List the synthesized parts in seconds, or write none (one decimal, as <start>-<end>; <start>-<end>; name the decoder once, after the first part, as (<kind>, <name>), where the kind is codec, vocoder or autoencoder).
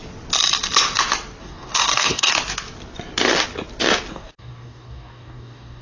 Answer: 1.4-2.3 (codec, DAC); 4.1-5.8